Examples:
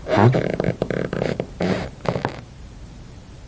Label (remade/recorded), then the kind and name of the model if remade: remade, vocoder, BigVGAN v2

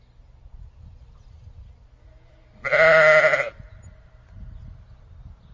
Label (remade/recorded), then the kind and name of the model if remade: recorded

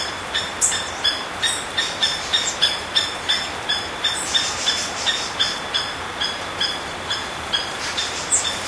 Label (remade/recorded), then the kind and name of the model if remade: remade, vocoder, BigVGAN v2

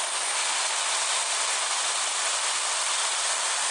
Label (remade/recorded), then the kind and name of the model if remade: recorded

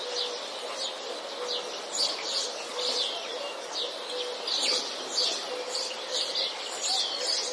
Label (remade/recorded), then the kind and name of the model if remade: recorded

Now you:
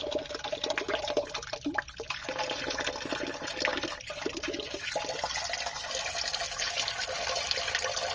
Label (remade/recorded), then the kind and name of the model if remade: recorded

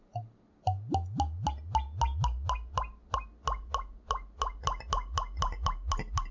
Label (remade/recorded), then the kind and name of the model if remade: recorded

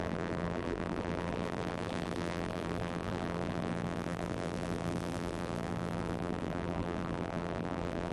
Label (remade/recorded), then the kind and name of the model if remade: remade, vocoder, BigVGAN v2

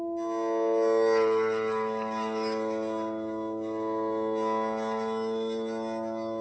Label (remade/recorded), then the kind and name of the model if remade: recorded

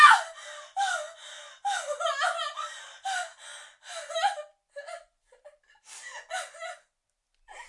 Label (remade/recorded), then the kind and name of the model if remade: recorded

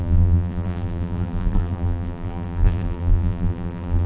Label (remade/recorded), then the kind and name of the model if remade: remade, vocoder, BigVGAN v2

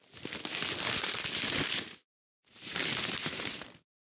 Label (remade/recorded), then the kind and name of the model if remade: recorded